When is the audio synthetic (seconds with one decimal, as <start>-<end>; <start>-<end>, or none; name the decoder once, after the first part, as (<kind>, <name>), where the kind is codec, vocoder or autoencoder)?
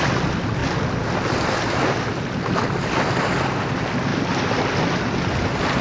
none